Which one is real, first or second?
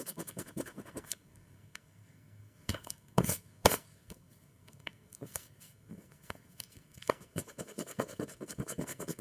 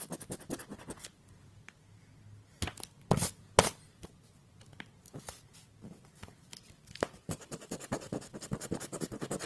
second